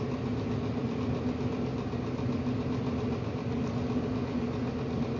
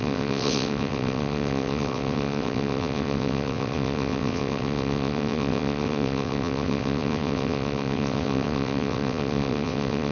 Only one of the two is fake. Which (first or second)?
second